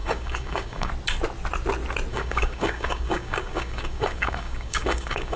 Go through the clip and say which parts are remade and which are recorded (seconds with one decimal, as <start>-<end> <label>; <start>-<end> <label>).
0.0-0.9 remade; 0.9-2.1 recorded; 2.1-5.4 remade